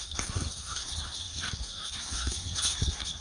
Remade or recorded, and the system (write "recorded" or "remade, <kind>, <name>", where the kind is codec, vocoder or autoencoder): remade, codec, SNAC